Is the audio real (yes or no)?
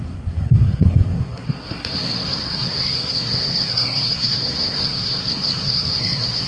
no